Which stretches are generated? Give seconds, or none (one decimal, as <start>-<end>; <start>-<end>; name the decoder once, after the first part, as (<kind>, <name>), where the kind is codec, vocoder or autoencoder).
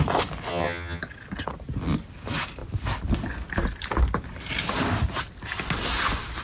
0.5-1.0 (vocoder, HiFi-GAN)